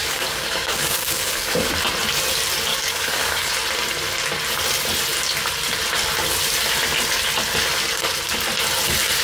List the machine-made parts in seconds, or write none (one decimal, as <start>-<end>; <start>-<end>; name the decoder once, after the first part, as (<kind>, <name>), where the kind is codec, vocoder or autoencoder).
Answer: 0.0-1.7 (codec, DAC); 2.7-3.5